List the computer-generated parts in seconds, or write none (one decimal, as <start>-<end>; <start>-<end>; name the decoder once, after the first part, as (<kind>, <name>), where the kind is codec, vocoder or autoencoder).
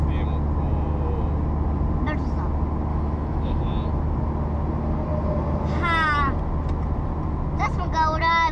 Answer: 2.9-3.6 (autoencoder, DAC-VAE)